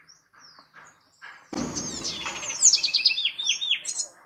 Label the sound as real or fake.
real